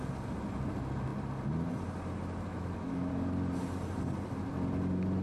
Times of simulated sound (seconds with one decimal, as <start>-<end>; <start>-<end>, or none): 2.5-3.1